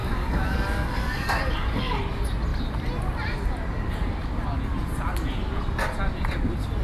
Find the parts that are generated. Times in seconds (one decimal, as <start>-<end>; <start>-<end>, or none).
0.0-2.0